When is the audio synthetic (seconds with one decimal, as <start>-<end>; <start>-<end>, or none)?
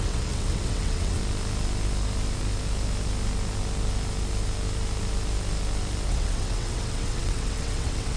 0.0-1.2; 6.1-8.2